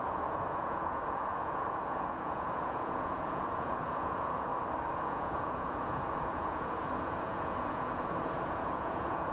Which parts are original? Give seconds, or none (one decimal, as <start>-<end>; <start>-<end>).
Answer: 4.5-5.0